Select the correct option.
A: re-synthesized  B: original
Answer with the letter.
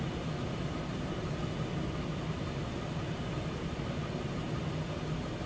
B